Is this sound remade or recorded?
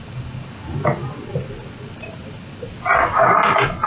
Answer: recorded